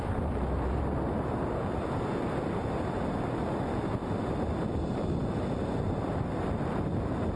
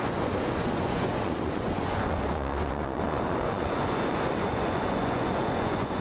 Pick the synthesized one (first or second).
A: second